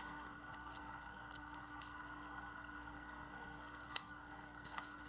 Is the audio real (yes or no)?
no